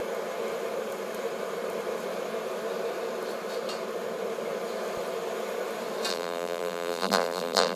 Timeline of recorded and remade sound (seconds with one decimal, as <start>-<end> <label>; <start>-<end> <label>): 0.0-6.1 recorded; 6.1-7.8 remade